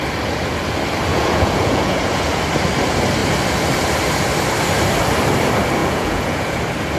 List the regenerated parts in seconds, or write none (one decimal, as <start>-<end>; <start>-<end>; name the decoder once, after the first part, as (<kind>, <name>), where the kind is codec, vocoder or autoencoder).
1.1-2.4 (vocoder, Vocos); 5.8-6.6